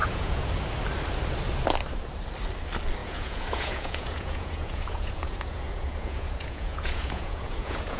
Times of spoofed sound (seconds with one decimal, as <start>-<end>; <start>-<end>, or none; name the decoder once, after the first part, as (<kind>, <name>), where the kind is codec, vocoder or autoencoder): 0.0-0.5 (vocoder, Vocos); 3.0-8.0